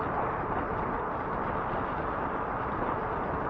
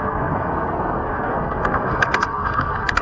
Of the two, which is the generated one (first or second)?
second